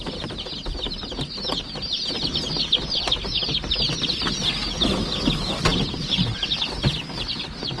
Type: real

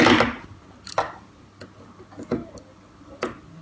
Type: real